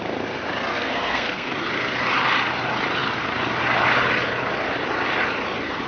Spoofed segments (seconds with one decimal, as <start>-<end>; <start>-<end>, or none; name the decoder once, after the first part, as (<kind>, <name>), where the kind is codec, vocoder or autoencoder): 0.7-1.5 (codec, SNAC)